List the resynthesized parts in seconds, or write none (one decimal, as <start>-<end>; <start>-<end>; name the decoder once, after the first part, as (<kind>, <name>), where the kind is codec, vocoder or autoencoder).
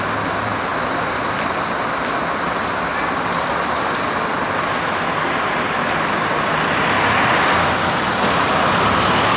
none